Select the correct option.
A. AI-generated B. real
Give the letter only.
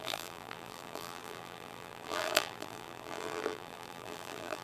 A